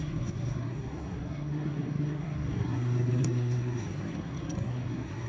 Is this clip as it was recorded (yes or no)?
no